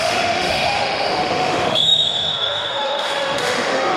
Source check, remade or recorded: remade